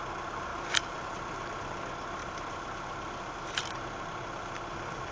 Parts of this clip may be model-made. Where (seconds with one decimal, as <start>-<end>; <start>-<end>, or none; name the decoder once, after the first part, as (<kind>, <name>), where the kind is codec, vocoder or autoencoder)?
0.5-1.1 (vocoder, BigVGAN v2); 2.2-4.5